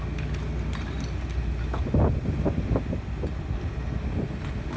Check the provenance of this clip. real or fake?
real